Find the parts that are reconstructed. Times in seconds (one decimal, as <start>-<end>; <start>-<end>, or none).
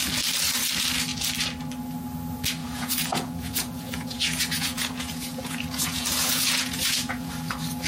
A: 2.6-7.3